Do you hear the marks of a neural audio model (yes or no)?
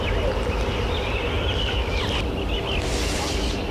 no